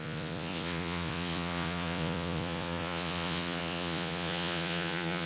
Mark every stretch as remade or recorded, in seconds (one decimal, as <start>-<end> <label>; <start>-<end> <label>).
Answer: 0.0-5.3 remade